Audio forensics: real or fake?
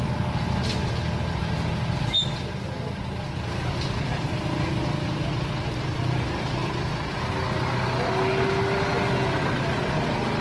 real